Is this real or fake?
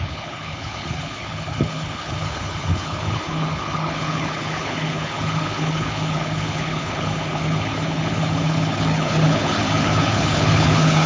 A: fake